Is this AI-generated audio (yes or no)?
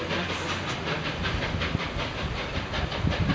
yes